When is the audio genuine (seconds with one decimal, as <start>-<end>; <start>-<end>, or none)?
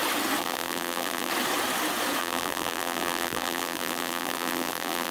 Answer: 0.0-0.4; 1.3-2.2